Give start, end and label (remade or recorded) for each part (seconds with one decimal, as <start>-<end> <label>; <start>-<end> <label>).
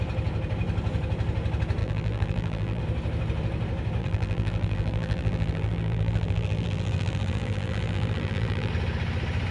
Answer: 0.0-1.8 recorded; 1.8-2.8 remade; 2.8-4.0 recorded; 4.0-8.7 remade; 8.7-9.5 recorded